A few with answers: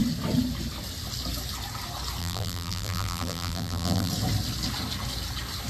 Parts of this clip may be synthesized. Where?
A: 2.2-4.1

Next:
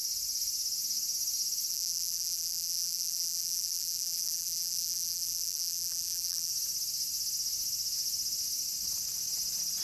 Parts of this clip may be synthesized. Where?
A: 1.7-6.5

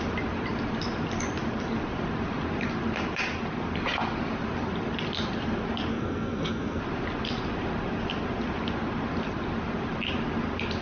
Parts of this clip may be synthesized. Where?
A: 5.9-6.8

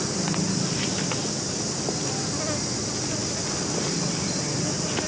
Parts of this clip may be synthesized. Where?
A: none

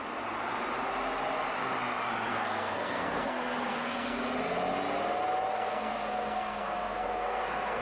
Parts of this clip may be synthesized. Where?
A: 2.3-4.2; 5.5-7.8